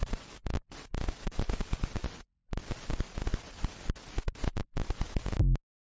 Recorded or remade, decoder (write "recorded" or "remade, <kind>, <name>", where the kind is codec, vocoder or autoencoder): recorded